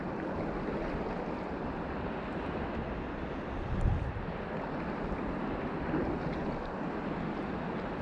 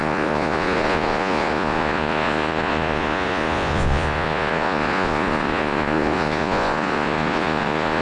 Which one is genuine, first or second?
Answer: first